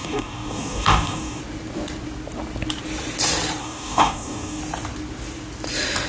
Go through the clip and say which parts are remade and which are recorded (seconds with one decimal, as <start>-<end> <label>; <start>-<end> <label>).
0.0-1.4 remade; 1.4-3.6 recorded; 3.6-4.6 remade; 4.6-6.1 recorded